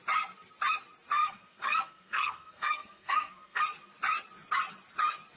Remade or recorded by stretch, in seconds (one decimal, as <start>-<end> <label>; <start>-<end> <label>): 0.0-1.2 recorded; 1.2-3.6 remade; 3.6-5.4 recorded